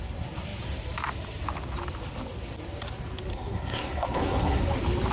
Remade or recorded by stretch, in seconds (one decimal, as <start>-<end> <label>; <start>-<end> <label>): 0.0-3.3 recorded; 3.3-4.6 remade; 4.6-5.1 recorded